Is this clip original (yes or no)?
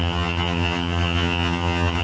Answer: no